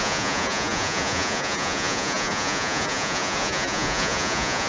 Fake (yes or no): yes